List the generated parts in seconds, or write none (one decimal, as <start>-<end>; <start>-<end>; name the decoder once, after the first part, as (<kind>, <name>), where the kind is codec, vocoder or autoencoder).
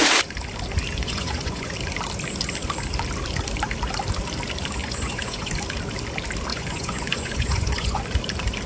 1.0-1.7 (vocoder, Vocos); 4.8-5.5; 6.5-8.0